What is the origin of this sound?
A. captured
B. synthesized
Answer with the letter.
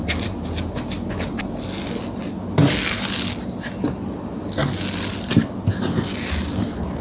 A